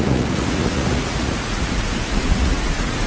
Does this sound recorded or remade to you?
remade